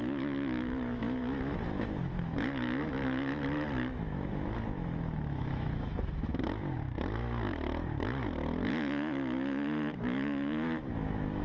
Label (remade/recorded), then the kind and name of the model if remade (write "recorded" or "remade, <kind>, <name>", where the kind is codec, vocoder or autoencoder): remade, autoencoder, DAC-VAE